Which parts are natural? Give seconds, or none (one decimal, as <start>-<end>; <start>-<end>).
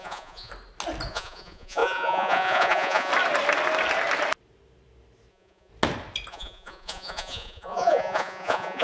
0.5-1.1; 3.1-5.3; 5.7-6.3